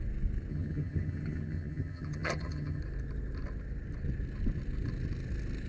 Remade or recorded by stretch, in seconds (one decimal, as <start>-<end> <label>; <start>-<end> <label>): 0.0-0.5 recorded; 0.5-2.8 remade; 2.8-5.7 recorded